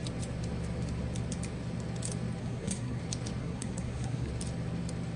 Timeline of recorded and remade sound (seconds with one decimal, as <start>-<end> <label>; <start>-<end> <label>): 0.0-2.4 recorded; 2.4-3.0 remade; 3.0-3.4 recorded; 3.4-4.3 remade; 4.3-5.2 recorded